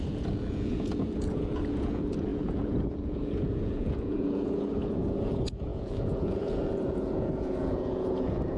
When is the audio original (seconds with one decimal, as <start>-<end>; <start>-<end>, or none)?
none